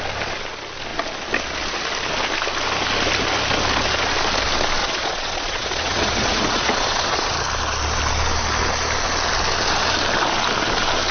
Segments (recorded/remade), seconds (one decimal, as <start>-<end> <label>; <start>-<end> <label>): 0.0-4.8 recorded; 4.8-7.3 remade; 7.3-11.1 recorded